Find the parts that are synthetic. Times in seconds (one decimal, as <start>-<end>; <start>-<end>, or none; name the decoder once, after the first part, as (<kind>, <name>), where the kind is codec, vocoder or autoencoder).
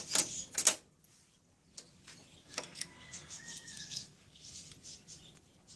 2.4-4.7 (codec, SNAC)